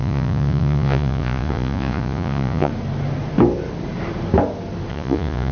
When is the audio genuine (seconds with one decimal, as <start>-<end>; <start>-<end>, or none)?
2.7-4.9